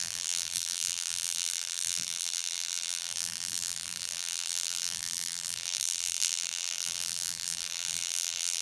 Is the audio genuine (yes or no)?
no